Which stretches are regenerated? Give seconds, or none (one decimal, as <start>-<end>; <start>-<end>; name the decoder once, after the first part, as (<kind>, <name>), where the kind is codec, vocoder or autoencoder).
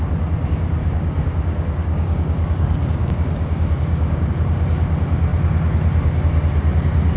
0.8-4.3 (codec, DAC)